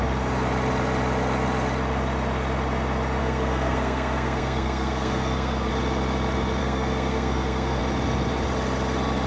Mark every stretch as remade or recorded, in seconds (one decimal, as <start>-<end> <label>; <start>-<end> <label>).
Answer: 0.0-3.2 recorded; 3.2-5.7 remade; 5.7-6.6 recorded; 6.6-7.8 remade; 7.8-9.3 recorded

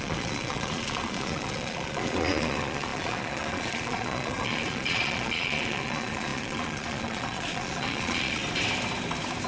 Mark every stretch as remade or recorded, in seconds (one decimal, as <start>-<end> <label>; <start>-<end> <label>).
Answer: 0.0-8.4 remade; 8.4-9.5 recorded

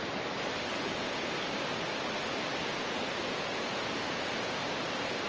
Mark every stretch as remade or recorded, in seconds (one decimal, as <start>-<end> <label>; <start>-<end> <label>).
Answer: 0.0-0.7 recorded; 0.7-1.2 remade; 1.2-2.7 recorded; 2.7-4.6 remade; 4.6-5.3 recorded

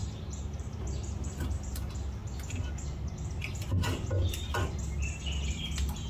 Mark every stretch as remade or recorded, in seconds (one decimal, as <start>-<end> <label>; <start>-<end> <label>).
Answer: 0.0-0.8 remade; 0.8-6.1 recorded

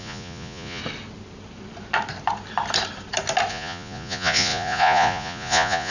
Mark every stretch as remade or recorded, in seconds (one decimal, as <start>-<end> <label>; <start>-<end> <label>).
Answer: 0.0-0.8 remade; 0.8-3.5 recorded; 3.5-5.9 remade